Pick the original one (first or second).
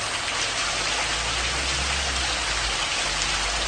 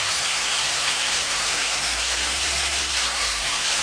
first